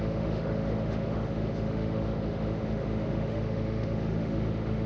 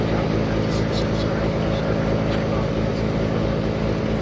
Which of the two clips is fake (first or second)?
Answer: first